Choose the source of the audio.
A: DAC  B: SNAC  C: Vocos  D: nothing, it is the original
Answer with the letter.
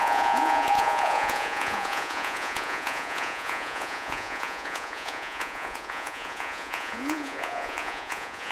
C